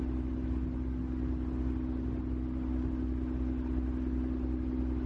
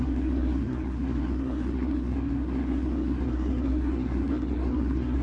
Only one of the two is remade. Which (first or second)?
second